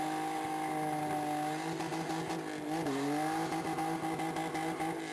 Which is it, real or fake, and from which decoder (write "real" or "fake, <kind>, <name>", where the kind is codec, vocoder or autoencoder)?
real